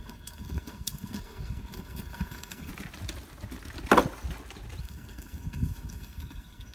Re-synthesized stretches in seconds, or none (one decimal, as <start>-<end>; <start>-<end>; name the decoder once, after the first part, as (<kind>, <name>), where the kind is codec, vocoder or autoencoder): 0.0-2.7 (codec, SNAC); 4.8-6.7